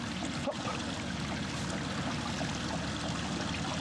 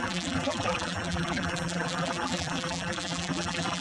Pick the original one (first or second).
first